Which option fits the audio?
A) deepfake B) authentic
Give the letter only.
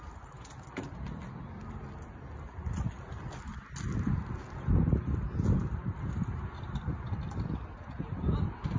B